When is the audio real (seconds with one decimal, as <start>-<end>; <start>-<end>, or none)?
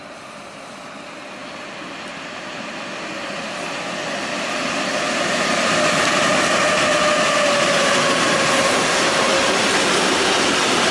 0.0-10.9